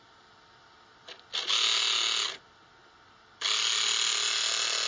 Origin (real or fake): real